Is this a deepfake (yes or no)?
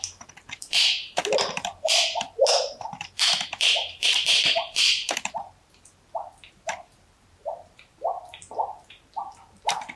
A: yes